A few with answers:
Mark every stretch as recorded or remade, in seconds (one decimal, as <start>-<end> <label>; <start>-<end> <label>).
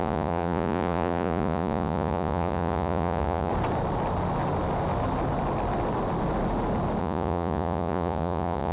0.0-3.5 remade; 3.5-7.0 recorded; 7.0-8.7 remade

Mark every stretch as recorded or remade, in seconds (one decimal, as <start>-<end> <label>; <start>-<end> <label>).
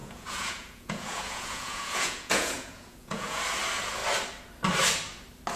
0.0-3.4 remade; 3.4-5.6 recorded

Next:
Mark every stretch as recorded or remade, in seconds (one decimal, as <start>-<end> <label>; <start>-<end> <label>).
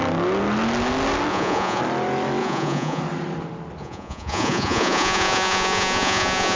0.0-1.3 recorded; 1.3-1.8 remade; 1.8-2.4 recorded; 2.4-3.0 remade; 3.0-3.8 recorded; 3.8-6.6 remade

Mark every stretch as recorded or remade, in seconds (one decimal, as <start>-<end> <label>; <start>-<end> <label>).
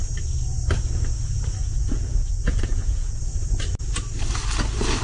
0.0-1.6 recorded; 1.6-3.2 remade; 3.2-5.0 recorded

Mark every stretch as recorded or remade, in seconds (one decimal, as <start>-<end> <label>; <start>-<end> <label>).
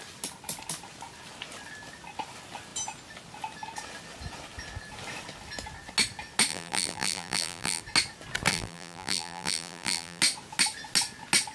0.0-6.5 recorded; 6.5-7.8 remade; 7.8-8.5 recorded; 8.5-10.2 remade; 10.2-11.5 recorded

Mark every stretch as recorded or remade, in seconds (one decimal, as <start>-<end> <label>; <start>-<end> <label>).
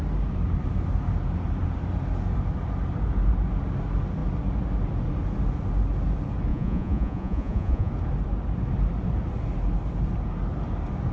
0.0-6.5 recorded; 6.5-7.9 remade; 7.9-11.1 recorded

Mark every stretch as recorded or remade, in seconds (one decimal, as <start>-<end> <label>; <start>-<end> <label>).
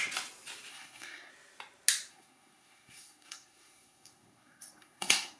0.0-0.7 recorded; 0.7-1.3 remade; 1.3-2.1 recorded; 2.1-5.4 remade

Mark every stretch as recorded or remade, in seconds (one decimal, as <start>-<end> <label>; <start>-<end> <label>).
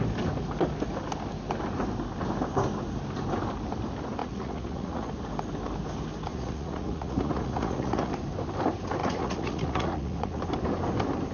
0.0-4.2 recorded; 4.2-5.1 remade; 5.1-6.3 recorded; 6.3-8.1 remade; 8.1-9.0 recorded; 9.0-10.4 remade; 10.4-11.3 recorded